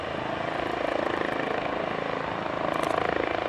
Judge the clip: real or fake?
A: fake